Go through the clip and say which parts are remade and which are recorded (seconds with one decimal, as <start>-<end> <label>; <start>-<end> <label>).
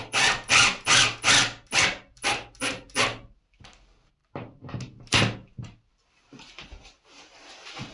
0.0-7.9 recorded